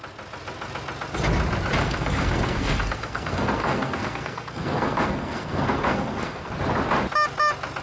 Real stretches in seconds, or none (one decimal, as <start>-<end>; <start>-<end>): 0.0-1.8; 6.5-7.8